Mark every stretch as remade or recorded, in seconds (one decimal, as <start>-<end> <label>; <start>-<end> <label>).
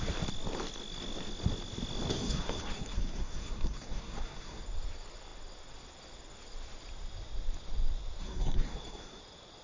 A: 0.0-2.1 recorded; 2.1-4.6 remade; 4.6-8.2 recorded; 8.2-9.2 remade; 9.2-9.6 recorded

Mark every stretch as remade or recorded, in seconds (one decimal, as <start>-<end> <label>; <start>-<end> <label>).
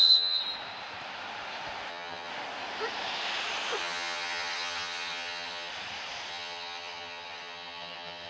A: 0.0-0.4 remade; 0.4-1.9 recorded; 1.9-2.3 remade; 2.3-3.8 recorded; 3.8-5.7 remade; 5.7-6.3 recorded; 6.3-8.3 remade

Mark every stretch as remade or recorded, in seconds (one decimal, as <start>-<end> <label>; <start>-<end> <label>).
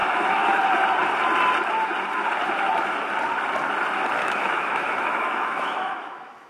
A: 0.0-0.6 remade; 0.6-4.2 recorded; 4.2-6.5 remade